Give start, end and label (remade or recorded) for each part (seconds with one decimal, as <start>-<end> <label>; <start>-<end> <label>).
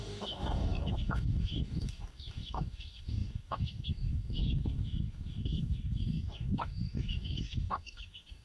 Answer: 0.0-8.4 remade